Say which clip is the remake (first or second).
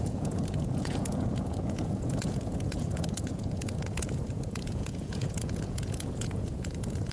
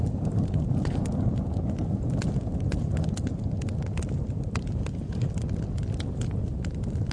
first